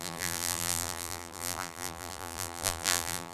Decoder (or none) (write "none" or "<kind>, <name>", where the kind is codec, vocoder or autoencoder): vocoder, BigVGAN v2